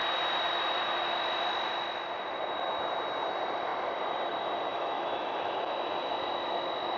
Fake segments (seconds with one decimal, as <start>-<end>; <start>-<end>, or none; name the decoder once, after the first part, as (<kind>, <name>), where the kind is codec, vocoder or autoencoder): 4.7-5.6 (autoencoder, DAC-VAE)